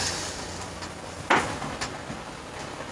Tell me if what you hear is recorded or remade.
recorded